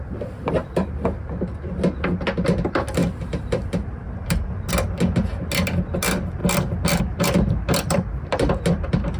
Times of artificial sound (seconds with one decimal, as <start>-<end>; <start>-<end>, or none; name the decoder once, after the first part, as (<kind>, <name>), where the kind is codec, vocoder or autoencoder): 3.0-4.7 (vocoder, BigVGAN v2)